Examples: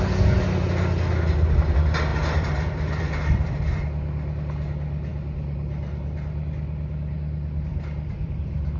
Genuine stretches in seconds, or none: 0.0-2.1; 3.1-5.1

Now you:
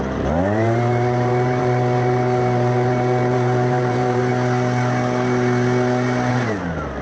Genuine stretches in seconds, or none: 4.3-6.3

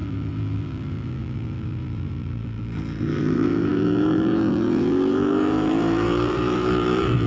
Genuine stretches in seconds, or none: none

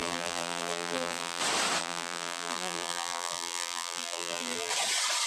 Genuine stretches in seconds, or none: 1.4-1.8; 4.7-5.3

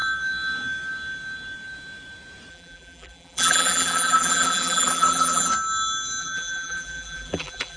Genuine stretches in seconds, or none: 0.0-2.5; 5.5-6.2

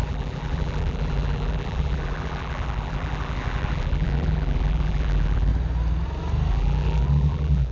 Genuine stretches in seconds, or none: 5.5-6.5

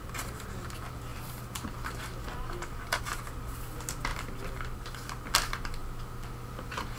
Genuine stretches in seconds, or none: 0.0-7.0